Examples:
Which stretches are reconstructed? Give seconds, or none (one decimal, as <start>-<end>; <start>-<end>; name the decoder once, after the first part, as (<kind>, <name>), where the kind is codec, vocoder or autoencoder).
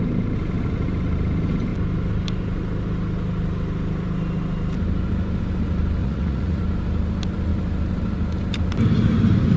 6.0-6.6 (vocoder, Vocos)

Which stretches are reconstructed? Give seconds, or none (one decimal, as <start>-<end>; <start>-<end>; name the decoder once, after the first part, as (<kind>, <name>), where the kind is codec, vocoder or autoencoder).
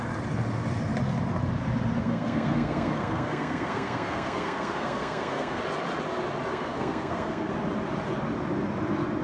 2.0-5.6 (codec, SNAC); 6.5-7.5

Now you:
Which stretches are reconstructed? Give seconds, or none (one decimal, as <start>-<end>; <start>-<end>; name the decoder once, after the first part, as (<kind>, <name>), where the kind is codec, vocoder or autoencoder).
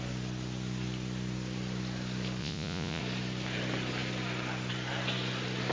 2.4-3.0 (vocoder, Vocos)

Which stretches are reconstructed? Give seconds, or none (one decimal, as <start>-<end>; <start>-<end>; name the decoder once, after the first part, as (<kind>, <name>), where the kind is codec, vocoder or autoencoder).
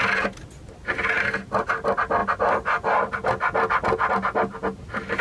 none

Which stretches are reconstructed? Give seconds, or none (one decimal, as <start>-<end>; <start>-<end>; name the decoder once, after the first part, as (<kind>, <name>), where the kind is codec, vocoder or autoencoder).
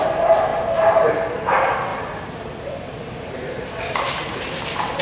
0.5-1.1 (vocoder, BigVGAN v2); 1.9-5.0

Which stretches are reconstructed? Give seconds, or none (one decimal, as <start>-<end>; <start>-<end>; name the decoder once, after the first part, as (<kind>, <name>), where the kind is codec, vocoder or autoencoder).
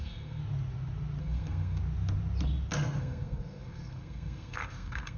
0.0-0.4 (codec, SNAC); 1.2-1.8; 3.0-5.2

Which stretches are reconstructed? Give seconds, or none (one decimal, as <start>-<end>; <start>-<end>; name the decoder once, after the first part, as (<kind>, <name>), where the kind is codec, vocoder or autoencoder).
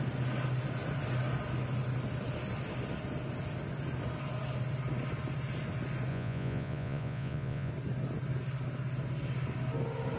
6.1-7.7 (vocoder, Vocos)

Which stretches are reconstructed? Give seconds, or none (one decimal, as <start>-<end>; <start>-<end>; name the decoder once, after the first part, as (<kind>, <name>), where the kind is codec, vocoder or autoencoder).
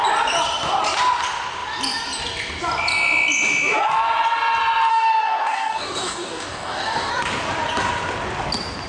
4.9-7.1 (codec, DAC)